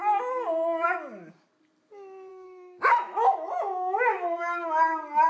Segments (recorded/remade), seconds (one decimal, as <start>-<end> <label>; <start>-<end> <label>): 0.0-2.3 recorded; 2.3-4.7 remade; 4.7-5.3 recorded